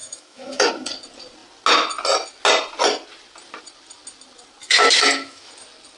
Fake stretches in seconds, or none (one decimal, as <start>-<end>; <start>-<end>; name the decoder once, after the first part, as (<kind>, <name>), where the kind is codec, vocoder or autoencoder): 0.0-0.7 (autoencoder, DAC-VAE); 4.6-5.5